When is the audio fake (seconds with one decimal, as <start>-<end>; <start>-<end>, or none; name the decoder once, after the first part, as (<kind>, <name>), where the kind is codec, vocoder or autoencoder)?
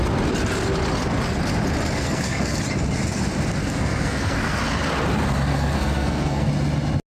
2.0-2.6 (codec, SNAC); 3.6-4.6; 5.5-6.5